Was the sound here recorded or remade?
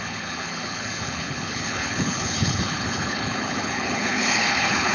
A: remade